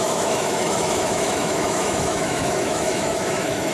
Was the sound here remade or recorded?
remade